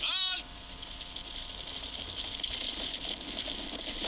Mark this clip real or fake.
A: real